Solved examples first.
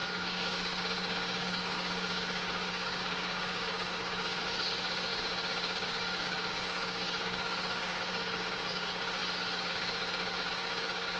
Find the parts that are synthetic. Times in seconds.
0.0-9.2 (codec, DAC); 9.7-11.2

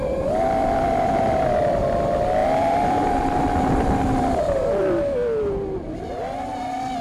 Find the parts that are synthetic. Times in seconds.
0.6-1.8 (vocoder, BigVGAN v2); 2.4-4.7